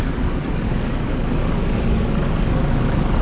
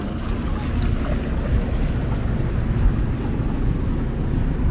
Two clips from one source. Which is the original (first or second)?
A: second